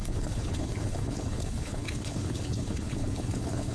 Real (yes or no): no